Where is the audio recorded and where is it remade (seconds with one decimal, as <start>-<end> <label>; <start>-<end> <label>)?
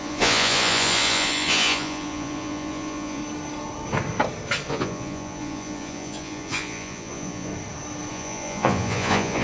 0.0-3.2 remade; 3.2-4.7 recorded; 4.7-7.5 remade; 7.5-8.1 recorded; 8.1-9.4 remade